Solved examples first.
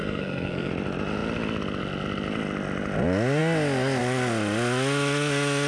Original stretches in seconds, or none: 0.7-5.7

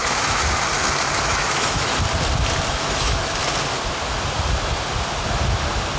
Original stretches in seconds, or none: 0.4-1.2; 1.9-2.7; 3.4-6.0

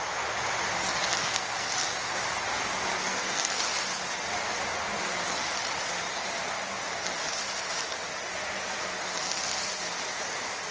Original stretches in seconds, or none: 0.0-1.2; 1.7-2.9; 3.6-10.7